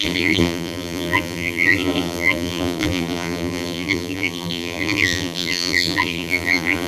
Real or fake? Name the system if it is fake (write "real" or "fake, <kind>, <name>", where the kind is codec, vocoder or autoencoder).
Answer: fake, vocoder, BigVGAN v2